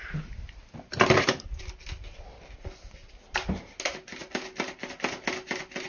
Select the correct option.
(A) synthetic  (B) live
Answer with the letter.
B